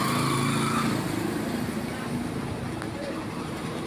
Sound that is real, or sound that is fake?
real